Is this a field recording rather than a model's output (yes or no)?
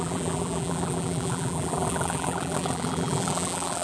no